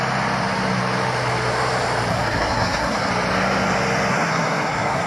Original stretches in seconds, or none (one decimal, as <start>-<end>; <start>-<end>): 0.0-2.1; 3.1-4.1